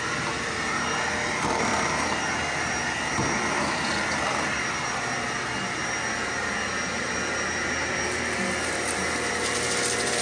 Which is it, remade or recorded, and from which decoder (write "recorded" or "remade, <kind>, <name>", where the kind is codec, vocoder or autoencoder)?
recorded